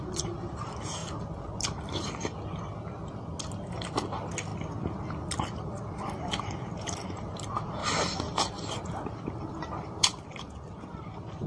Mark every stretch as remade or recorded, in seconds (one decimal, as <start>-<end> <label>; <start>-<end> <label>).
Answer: 0.0-1.0 remade; 1.0-3.7 recorded; 3.7-4.5 remade; 4.5-6.2 recorded; 6.2-7.8 remade; 7.8-8.3 recorded; 8.3-11.5 remade